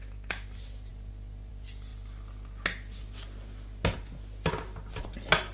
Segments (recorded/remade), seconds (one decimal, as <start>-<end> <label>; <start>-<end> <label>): 0.0-5.5 recorded